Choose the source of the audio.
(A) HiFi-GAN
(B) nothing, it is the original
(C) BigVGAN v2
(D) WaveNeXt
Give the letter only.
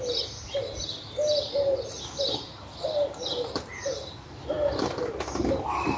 B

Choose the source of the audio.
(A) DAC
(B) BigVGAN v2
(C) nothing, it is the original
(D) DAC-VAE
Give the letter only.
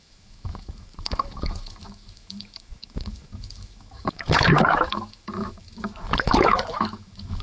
D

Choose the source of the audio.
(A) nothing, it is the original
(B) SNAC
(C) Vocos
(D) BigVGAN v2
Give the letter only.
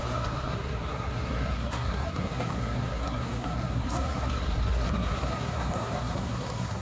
B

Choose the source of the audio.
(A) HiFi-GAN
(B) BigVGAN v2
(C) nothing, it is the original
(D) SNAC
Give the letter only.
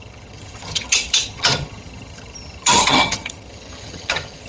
A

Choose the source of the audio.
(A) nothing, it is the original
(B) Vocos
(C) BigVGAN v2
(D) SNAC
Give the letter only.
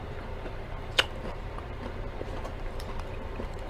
C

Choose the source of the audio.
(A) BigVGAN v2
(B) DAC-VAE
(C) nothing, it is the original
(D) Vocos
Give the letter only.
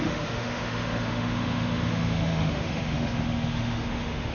B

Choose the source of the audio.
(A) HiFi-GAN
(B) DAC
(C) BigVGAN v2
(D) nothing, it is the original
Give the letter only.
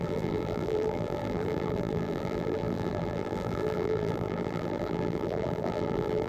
C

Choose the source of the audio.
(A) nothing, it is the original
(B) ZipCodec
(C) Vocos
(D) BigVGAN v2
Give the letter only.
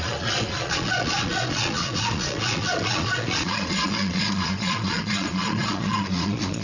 C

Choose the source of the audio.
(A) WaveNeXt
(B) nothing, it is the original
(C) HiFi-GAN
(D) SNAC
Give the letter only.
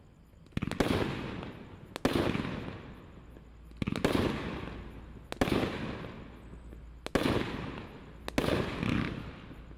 B